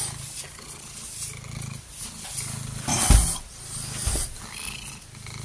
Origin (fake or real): real